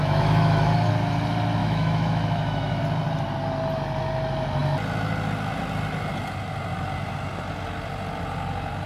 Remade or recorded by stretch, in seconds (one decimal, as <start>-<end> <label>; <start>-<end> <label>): 0.0-0.9 remade; 0.9-1.6 recorded; 1.6-2.8 remade; 2.8-8.9 recorded